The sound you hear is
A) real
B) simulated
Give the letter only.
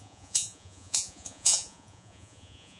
B